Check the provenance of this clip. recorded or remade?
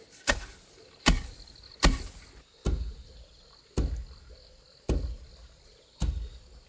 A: recorded